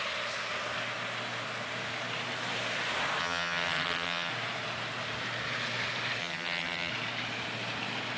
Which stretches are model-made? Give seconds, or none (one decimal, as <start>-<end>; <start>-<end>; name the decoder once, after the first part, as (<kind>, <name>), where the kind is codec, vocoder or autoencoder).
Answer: 3.2-4.3 (vocoder, HiFi-GAN); 6.2-6.9